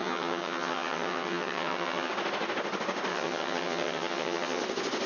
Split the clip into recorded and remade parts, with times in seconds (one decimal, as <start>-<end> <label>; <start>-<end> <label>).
0.0-2.1 remade; 2.1-3.1 recorded; 3.1-4.6 remade; 4.6-5.1 recorded